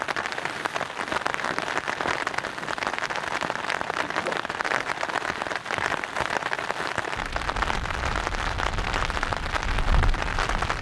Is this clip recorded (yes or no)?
yes